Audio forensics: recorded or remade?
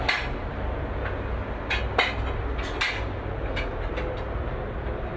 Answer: recorded